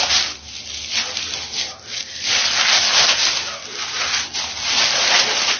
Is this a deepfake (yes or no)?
no